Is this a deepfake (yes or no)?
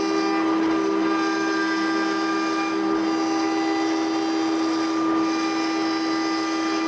no